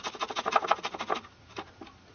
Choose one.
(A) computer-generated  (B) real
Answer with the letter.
B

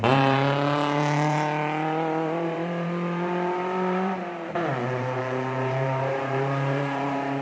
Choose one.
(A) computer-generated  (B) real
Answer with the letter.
A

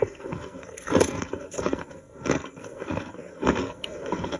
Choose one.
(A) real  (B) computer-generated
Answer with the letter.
B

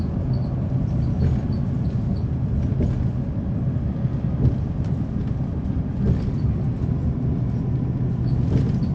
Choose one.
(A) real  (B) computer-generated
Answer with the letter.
A